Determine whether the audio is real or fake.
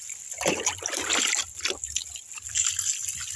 real